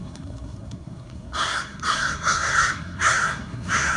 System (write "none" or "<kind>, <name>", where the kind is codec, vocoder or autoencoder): codec, SNAC